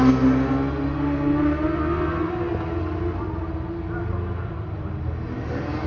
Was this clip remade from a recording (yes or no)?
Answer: no